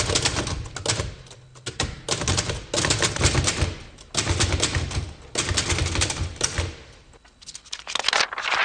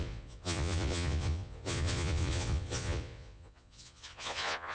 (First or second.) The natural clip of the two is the first